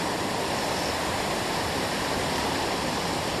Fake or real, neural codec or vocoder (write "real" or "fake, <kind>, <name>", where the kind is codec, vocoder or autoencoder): fake, vocoder, BigVGAN v2